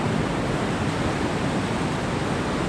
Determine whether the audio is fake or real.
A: real